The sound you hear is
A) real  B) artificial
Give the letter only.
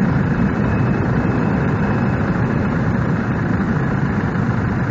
B